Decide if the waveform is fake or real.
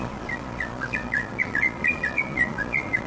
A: fake